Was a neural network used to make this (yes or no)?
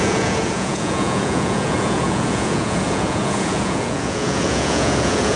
yes